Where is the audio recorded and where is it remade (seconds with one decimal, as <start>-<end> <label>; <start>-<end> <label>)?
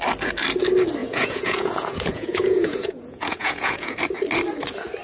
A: 0.0-1.0 recorded; 1.0-4.0 remade; 4.0-5.0 recorded